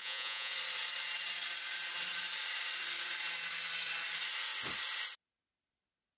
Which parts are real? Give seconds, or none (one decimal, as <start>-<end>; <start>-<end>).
0.5-6.2